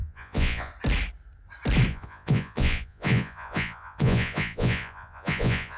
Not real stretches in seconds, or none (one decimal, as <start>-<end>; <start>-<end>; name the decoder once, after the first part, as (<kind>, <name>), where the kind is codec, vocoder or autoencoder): 0.0-0.7 (vocoder, Vocos); 1.9-5.8